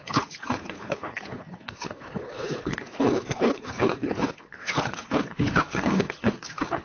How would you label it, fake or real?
fake